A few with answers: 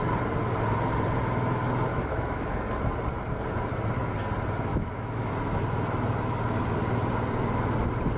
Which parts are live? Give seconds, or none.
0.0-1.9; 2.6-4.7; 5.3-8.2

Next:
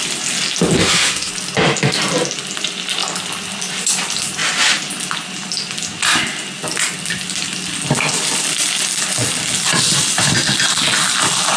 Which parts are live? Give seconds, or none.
0.0-0.8; 1.3-11.6

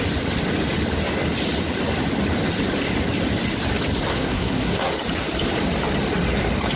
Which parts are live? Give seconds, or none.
0.0-4.1; 4.9-6.8

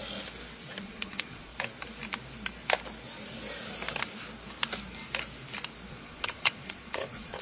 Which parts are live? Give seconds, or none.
0.0-0.8; 1.5-5.9

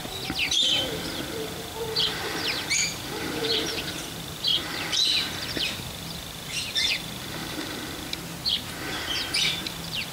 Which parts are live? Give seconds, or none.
0.0-0.7

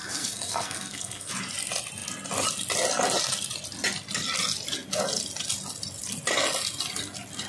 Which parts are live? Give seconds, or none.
1.3-7.5